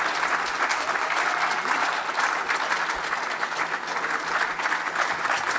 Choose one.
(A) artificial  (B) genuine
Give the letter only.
B